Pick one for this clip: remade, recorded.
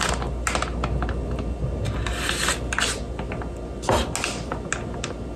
recorded